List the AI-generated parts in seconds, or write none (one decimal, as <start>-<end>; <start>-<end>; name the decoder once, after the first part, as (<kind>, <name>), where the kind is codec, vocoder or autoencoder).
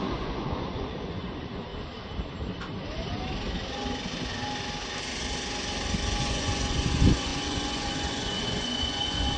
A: 0.0-1.7 (vocoder, Vocos); 6.2-9.4